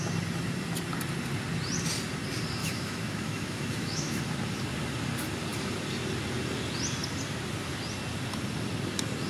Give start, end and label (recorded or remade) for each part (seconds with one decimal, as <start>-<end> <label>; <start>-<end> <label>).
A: 0.0-2.6 recorded; 2.6-4.2 remade; 4.2-9.3 recorded